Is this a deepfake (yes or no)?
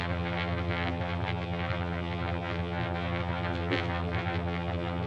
yes